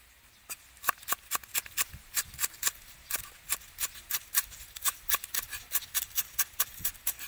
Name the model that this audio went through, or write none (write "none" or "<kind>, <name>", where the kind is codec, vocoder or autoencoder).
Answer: none